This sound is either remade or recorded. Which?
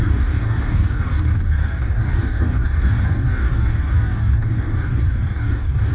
remade